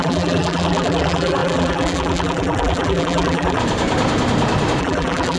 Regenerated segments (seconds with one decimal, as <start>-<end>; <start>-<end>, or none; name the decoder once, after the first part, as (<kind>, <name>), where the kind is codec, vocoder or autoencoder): 0.0-3.6 (vocoder, BigVGAN v2); 4.8-5.4

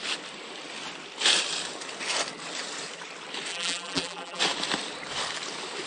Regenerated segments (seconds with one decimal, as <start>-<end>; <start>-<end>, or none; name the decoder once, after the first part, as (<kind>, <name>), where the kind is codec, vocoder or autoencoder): 3.5-4.4 (vocoder, BigVGAN v2)

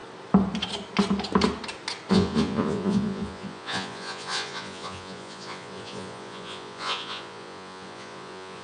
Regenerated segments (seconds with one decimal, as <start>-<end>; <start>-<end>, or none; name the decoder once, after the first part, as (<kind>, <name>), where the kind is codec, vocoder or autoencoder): 2.1-8.6 (vocoder, Vocos)

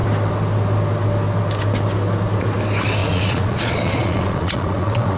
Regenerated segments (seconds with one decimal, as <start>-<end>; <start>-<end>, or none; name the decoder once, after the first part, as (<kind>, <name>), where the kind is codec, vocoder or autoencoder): 3.0-5.2 (vocoder, Vocos)

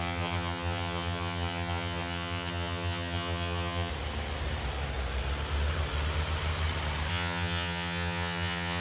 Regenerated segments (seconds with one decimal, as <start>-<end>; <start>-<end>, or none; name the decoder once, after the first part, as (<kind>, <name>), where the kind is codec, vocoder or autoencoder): 0.0-3.9 (vocoder, HiFi-GAN); 7.1-8.8

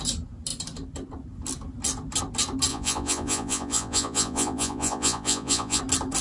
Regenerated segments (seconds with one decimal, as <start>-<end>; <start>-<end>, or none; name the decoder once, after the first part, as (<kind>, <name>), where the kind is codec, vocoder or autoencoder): 2.7-5.8 (vocoder, Vocos)